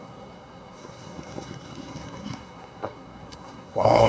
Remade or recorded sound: remade